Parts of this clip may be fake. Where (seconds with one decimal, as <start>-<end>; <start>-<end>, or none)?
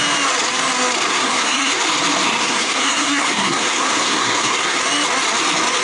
1.1-1.7; 2.4-4.8